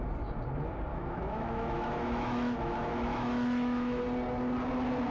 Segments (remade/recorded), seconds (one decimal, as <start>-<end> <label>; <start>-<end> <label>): 0.0-0.9 recorded; 0.9-4.0 remade; 4.0-5.1 recorded